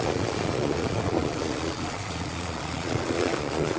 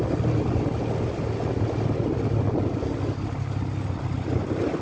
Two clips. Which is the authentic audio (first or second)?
second